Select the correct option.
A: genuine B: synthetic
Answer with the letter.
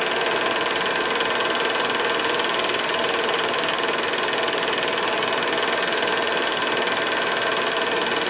A